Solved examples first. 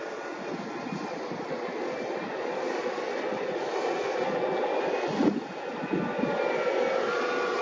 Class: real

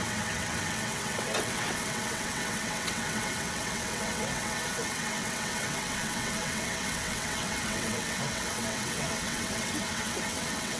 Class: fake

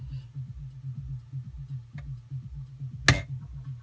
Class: real